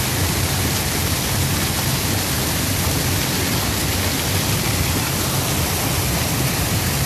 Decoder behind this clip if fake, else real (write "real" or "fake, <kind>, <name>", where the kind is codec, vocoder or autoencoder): real